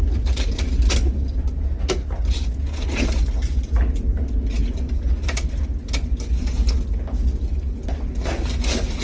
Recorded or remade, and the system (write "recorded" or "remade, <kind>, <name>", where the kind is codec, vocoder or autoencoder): recorded